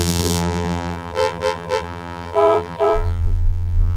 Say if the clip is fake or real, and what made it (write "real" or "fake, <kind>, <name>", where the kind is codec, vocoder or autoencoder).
fake, vocoder, BigVGAN v2